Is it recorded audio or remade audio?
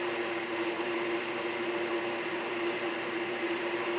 remade